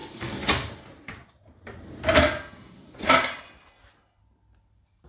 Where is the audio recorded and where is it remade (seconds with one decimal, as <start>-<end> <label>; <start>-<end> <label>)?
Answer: 0.0-1.0 remade; 1.0-2.6 recorded; 2.6-3.7 remade; 3.7-5.1 recorded